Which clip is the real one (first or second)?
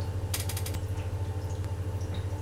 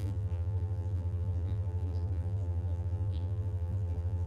first